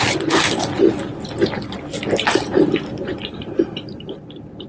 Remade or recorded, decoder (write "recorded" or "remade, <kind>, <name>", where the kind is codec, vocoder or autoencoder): recorded